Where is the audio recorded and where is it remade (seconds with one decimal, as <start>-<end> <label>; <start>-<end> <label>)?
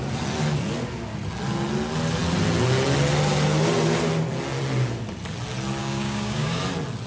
0.0-5.8 recorded; 5.8-6.6 remade; 6.6-7.1 recorded